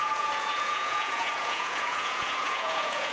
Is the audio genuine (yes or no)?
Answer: no